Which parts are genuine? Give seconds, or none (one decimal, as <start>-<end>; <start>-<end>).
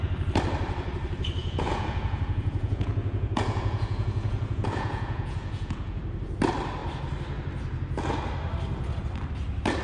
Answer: 0.0-1.4; 6.0-9.8